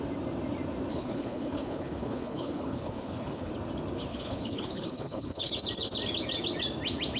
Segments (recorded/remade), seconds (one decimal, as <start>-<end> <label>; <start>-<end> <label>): 0.0-0.9 recorded; 0.9-3.5 remade; 3.5-4.1 recorded; 4.1-5.5 remade; 5.5-7.2 recorded